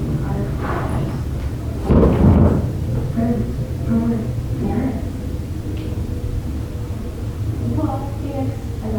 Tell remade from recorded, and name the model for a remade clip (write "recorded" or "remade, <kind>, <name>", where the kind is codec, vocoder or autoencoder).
recorded